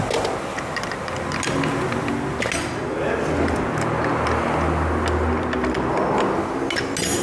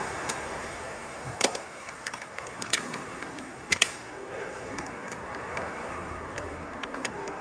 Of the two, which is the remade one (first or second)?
second